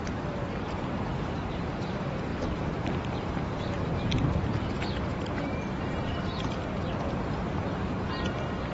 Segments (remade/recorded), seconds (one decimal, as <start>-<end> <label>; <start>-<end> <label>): 0.0-8.7 remade